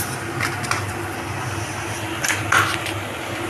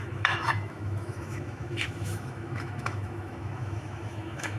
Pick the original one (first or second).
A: first